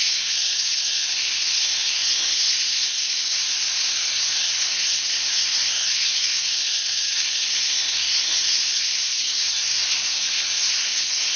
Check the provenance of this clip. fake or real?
fake